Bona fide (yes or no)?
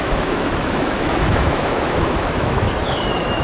no